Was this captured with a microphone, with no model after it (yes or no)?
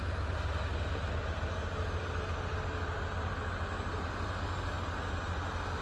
yes